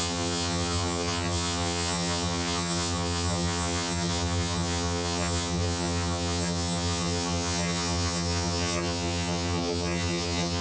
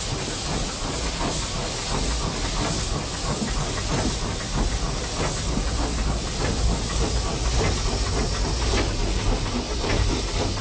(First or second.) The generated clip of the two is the first